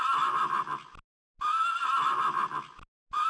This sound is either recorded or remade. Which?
recorded